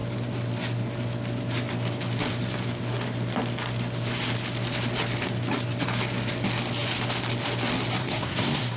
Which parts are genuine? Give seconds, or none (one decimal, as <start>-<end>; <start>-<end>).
0.0-8.0